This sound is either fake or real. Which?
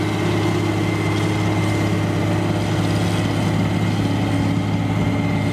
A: real